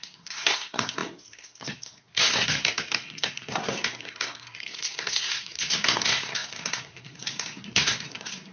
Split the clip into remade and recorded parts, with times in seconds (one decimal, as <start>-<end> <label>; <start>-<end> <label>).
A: 0.0-8.5 remade